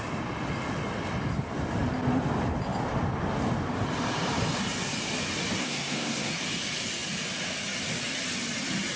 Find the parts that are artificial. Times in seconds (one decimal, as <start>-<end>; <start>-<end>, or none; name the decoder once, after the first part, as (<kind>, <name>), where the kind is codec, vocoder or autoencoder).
5.6-6.3 (codec, SNAC)